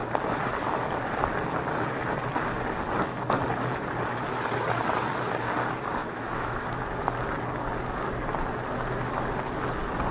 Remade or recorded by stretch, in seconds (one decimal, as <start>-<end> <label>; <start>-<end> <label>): 0.0-6.0 recorded; 6.0-6.6 remade; 6.6-10.1 recorded